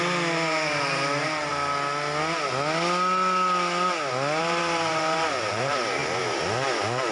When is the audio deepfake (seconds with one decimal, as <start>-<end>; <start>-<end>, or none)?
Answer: 0.0-1.5; 4.4-7.1